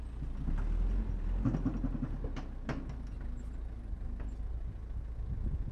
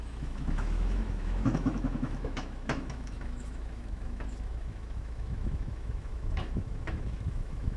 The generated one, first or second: second